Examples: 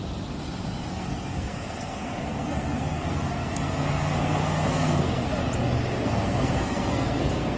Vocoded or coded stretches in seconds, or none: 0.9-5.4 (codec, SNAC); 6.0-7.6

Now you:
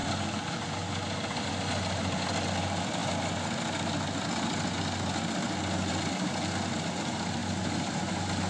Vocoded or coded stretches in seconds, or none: none

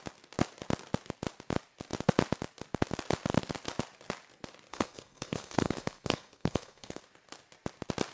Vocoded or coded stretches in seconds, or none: 4.7-7.0 (codec, SNAC)

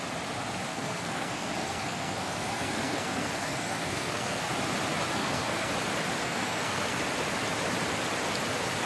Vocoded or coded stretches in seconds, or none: 0.7-4.5 (codec, SNAC); 5.2-5.7; 6.2-7.0